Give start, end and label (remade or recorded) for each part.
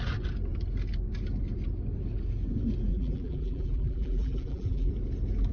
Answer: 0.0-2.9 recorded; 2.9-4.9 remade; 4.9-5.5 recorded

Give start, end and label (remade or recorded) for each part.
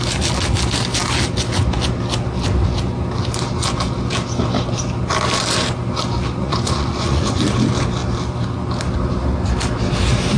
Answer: 0.0-6.4 recorded; 6.4-7.4 remade; 7.4-10.4 recorded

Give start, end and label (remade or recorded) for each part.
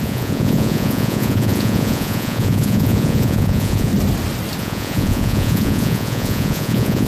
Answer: 0.0-3.9 remade; 3.9-4.6 recorded; 4.6-7.1 remade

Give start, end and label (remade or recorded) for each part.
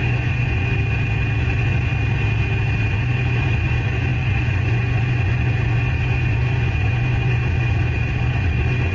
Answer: 0.0-0.7 remade; 0.7-1.4 recorded; 1.4-1.9 remade; 1.9-2.9 recorded; 2.9-8.9 remade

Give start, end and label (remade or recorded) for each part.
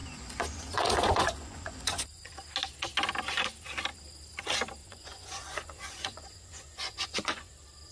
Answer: 0.0-2.3 remade; 2.3-4.8 recorded; 4.8-7.5 remade; 7.5-7.9 recorded